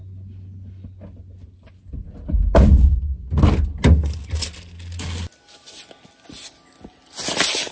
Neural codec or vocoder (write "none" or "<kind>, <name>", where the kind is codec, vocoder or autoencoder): none